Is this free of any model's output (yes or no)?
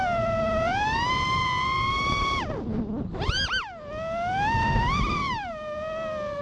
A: yes